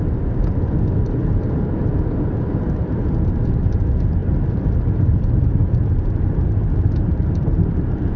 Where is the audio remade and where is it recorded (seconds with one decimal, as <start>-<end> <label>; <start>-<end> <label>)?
0.0-1.2 recorded; 1.2-1.8 remade; 1.8-4.2 recorded; 4.2-8.2 remade